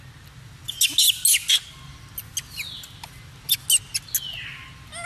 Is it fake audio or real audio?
real